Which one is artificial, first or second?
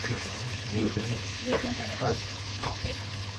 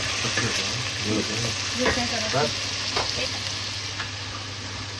first